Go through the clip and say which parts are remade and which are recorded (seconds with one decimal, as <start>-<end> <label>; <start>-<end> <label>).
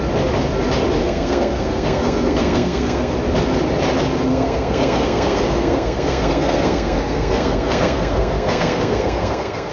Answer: 0.0-1.0 recorded; 1.0-3.1 remade; 3.1-4.3 recorded; 4.3-9.7 remade